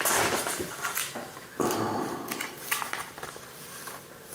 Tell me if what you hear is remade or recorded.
recorded